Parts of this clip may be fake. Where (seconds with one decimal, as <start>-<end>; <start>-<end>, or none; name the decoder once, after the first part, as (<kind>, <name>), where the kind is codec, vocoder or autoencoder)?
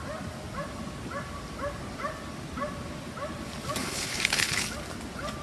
3.8-4.6 (codec, HILCodec)